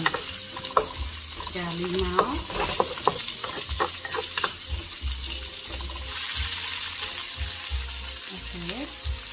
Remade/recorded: recorded